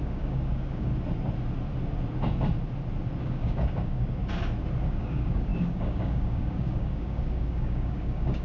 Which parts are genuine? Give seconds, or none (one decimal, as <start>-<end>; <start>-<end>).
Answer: 0.9-3.2; 4.2-4.9